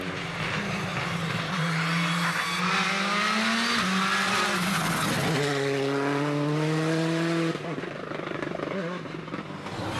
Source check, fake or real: real